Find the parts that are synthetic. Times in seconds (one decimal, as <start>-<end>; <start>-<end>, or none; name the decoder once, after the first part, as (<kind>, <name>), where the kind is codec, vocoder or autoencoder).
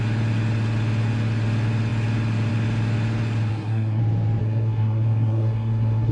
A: 3.5-4.0 (codec, SNAC); 4.4-6.1